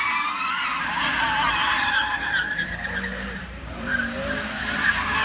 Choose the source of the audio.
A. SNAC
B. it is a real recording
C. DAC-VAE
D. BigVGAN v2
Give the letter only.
D